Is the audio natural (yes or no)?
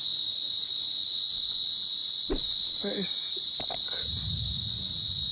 yes